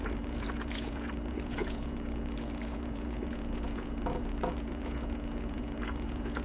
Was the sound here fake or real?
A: fake